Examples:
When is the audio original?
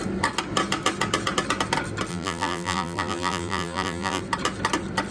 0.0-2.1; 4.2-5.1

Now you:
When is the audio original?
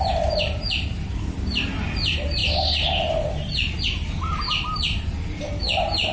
0.0-6.1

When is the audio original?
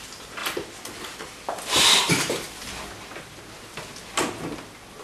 0.0-0.4; 3.4-5.0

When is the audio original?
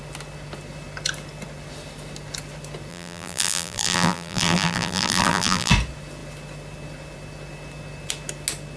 0.0-2.9; 5.7-8.8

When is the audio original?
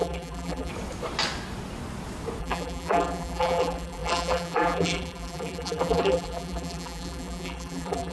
0.7-2.4